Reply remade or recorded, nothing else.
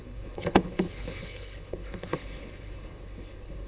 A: remade